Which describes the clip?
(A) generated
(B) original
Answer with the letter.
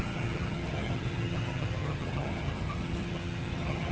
A